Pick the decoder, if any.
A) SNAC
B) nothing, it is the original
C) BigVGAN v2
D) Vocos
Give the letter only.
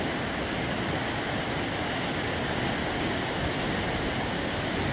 B